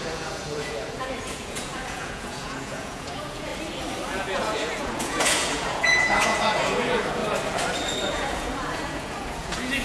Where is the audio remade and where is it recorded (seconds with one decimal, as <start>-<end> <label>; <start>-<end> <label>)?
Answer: 0.0-3.5 remade; 3.5-4.2 recorded; 4.2-7.2 remade; 7.2-8.1 recorded; 8.1-9.8 remade